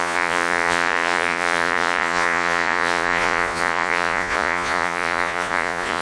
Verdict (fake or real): fake